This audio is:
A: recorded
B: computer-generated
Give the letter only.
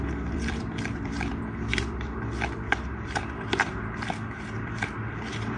B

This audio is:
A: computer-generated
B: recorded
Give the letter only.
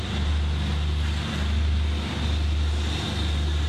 B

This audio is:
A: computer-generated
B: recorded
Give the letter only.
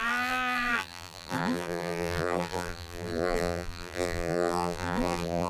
A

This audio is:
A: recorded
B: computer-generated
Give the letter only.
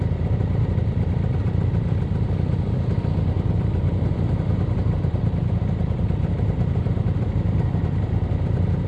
A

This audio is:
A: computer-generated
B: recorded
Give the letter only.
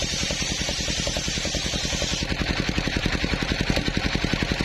A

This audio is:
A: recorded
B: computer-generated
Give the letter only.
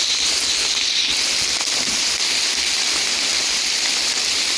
A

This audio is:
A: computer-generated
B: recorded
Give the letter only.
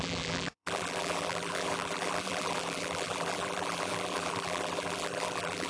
A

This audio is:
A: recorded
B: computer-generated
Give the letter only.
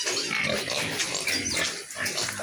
A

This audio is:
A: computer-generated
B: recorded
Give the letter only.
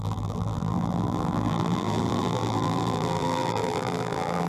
A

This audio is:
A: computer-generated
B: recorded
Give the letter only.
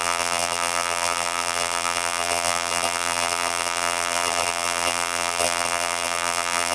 A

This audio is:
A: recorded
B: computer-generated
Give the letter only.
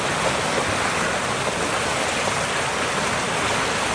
A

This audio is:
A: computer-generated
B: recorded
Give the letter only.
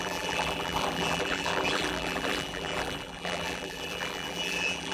A